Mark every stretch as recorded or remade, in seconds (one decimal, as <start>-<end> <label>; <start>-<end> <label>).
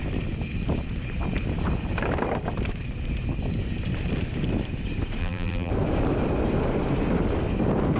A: 0.0-5.2 recorded; 5.2-5.7 remade; 5.7-8.0 recorded